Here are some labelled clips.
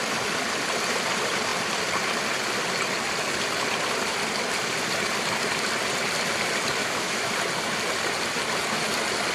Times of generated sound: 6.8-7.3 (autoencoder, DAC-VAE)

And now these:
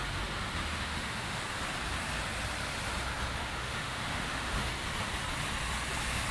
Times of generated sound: 0.7-1.4 (autoencoder, DAC-VAE); 3.4-4.7

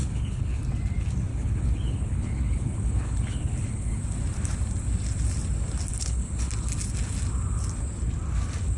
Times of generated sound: 0.0-0.6 (codec, HILCodec); 1.3-4.0; 5.9-6.5

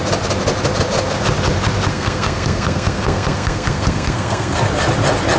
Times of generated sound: 1.9-4.6 (codec, SNAC)

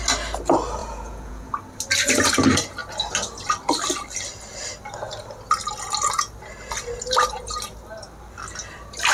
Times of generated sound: 0.8-1.5 (vocoder, Vocos)